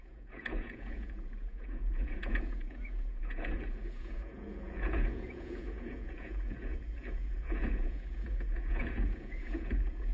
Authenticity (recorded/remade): remade